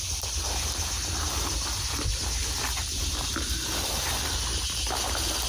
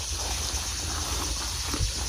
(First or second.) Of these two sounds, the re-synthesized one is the first